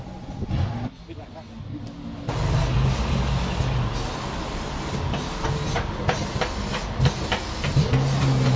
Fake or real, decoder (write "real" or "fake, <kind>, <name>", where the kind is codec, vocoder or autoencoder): real